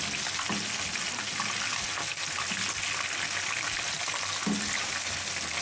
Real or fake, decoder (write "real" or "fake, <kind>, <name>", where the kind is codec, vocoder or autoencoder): real